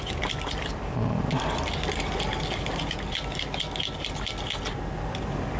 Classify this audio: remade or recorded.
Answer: recorded